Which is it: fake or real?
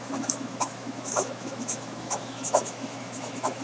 fake